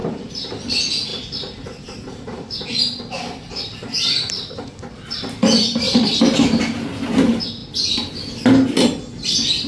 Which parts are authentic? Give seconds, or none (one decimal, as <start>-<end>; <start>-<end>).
0.5-1.1; 6.2-9.7